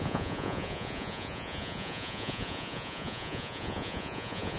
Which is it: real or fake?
fake